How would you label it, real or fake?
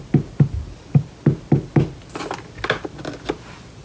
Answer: real